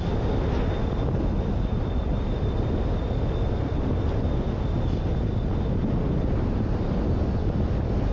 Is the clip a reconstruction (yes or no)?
no